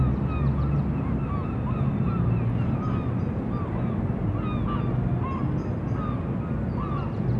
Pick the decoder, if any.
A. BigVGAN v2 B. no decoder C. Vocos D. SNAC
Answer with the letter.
B